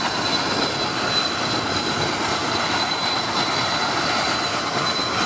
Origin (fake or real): real